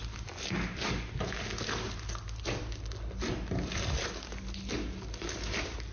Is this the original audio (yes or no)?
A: yes